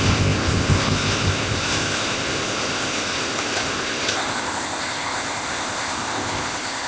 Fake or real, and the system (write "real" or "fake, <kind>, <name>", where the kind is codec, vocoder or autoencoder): fake, codec, ZipCodec